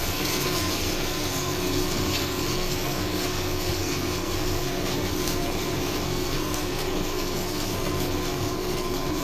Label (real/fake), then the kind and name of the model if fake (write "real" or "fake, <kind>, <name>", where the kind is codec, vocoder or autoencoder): fake, codec, SNAC